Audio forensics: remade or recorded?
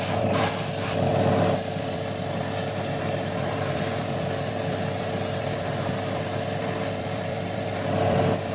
remade